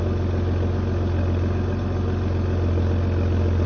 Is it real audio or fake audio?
real